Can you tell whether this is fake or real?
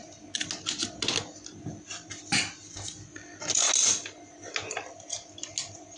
real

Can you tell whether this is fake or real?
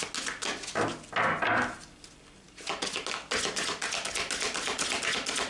real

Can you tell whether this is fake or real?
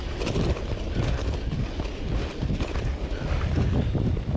real